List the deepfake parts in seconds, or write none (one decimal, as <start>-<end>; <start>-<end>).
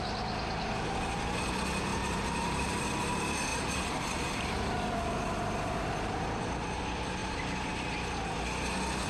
1.9-2.8; 3.5-4.1; 7.2-7.7